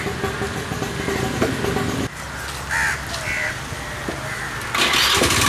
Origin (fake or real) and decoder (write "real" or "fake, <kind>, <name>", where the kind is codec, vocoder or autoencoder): real